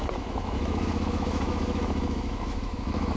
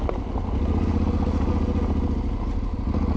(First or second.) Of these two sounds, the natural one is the second